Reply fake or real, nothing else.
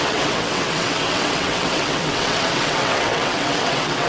fake